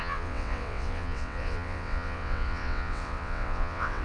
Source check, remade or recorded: remade